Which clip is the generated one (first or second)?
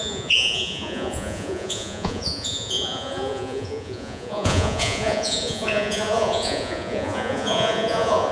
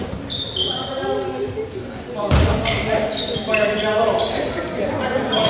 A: first